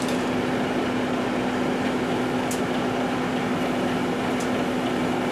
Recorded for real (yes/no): yes